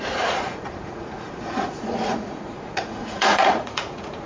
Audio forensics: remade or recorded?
remade